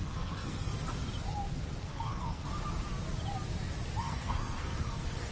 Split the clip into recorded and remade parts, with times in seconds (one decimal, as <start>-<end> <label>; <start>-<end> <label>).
0.0-0.7 remade; 0.7-1.8 recorded; 1.8-2.4 remade; 2.4-4.0 recorded; 4.0-5.3 remade